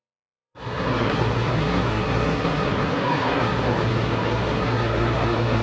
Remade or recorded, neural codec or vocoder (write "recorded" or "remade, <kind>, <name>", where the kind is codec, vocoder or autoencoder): remade, codec, SNAC